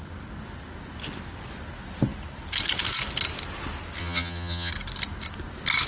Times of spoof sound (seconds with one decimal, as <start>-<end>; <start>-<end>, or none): 4.0-4.7